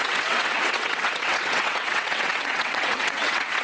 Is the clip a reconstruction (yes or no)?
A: yes